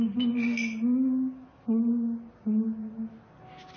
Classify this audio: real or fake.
real